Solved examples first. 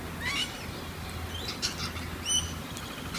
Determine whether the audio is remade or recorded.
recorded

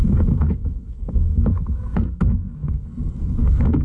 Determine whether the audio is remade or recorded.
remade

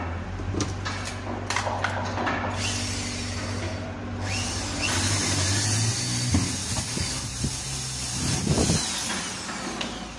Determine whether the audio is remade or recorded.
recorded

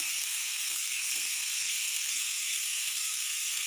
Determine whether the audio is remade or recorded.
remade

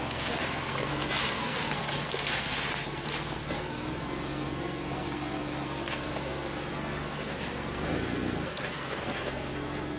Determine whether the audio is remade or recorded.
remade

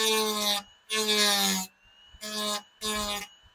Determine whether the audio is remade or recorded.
recorded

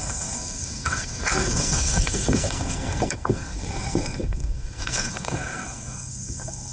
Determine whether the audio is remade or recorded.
remade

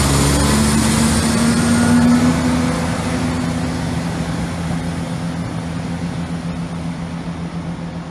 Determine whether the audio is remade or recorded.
recorded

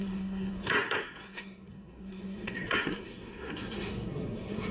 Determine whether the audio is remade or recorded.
remade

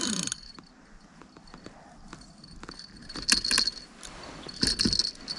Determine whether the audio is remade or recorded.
recorded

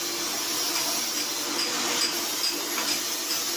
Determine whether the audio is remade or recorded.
recorded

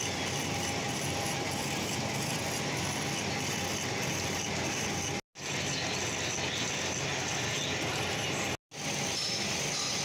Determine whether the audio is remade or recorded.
recorded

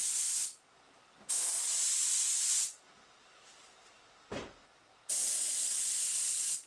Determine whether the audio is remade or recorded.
recorded